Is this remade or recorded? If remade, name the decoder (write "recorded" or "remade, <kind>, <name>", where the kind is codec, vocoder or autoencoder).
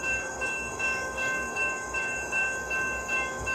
remade, codec, DAC